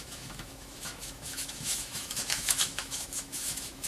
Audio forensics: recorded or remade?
remade